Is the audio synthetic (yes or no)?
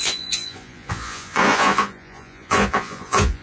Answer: yes